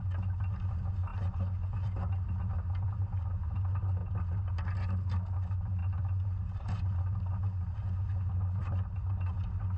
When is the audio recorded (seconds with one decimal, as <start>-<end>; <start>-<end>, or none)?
0.0-9.8